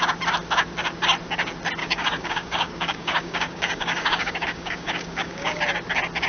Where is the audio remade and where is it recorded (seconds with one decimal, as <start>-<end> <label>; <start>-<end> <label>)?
0.0-1.8 recorded; 1.8-5.6 remade; 5.6-6.3 recorded

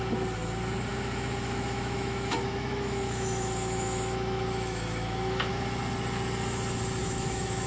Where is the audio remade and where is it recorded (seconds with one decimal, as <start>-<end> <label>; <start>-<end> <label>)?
0.0-0.9 recorded; 0.9-5.5 remade; 5.5-7.0 recorded; 7.0-7.7 remade